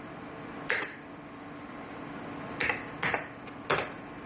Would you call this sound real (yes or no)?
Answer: yes